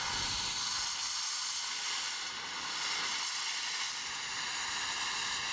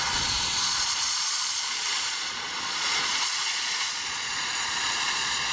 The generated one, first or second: second